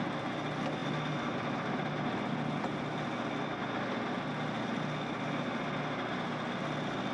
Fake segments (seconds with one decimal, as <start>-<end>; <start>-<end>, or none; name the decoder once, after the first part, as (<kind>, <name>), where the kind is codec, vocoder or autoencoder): none

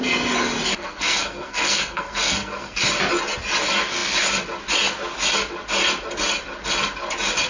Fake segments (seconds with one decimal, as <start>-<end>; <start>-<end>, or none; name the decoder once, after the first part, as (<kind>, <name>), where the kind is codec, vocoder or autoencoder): 0.7-2.8 (codec, SNAC)

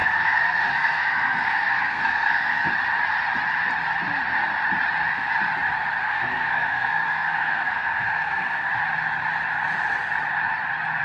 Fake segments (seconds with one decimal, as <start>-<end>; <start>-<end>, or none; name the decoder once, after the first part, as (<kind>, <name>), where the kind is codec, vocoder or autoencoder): 0.0-2.7 (codec, SNAC); 6.0-8.7

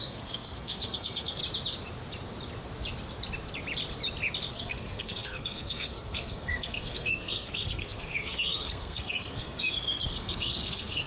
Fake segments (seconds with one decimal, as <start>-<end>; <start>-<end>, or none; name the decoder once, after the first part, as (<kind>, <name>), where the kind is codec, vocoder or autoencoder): 0.0-1.4 (codec, SNAC); 4.5-11.1